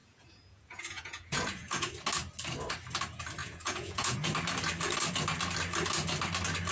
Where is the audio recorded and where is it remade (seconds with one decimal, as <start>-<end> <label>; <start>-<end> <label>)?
0.0-1.9 remade; 1.9-3.4 recorded; 3.4-4.3 remade; 4.3-6.7 recorded